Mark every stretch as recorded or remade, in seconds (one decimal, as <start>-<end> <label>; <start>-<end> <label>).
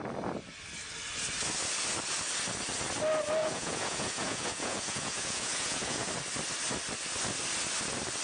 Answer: 0.0-3.4 recorded; 3.4-6.1 remade; 6.1-8.2 recorded